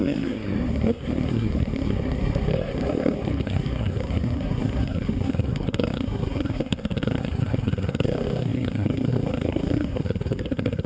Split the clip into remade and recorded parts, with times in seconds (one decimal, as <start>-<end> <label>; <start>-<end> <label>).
0.0-10.9 remade